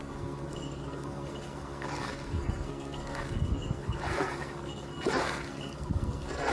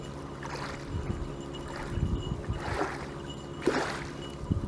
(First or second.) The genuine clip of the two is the second